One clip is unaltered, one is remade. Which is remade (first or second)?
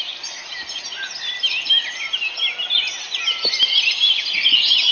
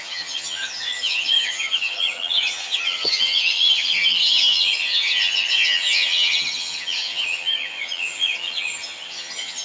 second